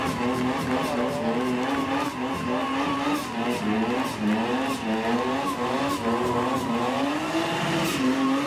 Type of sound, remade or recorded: recorded